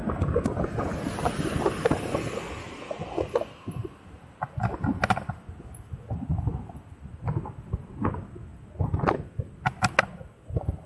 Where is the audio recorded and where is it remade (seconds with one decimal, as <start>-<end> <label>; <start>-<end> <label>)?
0.0-3.8 recorded; 3.8-4.4 remade; 4.4-10.9 recorded